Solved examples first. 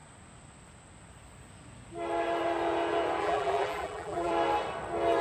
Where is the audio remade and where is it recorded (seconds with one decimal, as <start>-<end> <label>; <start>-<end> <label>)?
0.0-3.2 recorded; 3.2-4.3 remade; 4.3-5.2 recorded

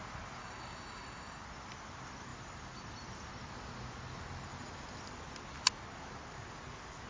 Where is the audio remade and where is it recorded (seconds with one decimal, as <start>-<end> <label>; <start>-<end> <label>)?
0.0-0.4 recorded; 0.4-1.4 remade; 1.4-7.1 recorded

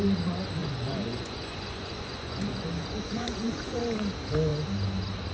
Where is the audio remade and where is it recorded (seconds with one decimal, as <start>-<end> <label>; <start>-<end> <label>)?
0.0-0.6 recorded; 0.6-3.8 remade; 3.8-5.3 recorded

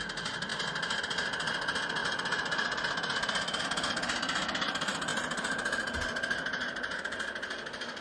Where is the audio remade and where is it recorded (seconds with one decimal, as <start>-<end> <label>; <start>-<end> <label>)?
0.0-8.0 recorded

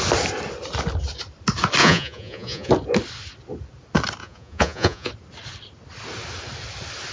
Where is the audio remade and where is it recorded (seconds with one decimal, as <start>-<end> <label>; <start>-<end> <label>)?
0.0-1.8 recorded; 1.8-2.7 remade; 2.7-4.2 recorded; 4.2-5.1 remade; 5.1-7.1 recorded

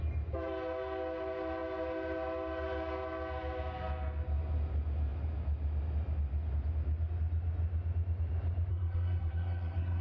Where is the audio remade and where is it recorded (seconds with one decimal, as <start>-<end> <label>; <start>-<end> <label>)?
0.0-8.7 recorded; 8.7-10.0 remade

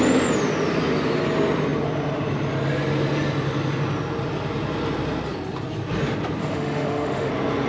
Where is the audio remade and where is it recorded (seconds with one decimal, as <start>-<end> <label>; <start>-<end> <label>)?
0.0-6.4 recorded; 6.4-7.3 remade; 7.3-7.7 recorded